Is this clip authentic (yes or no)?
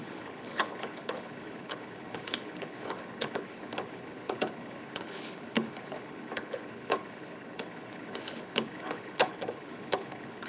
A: no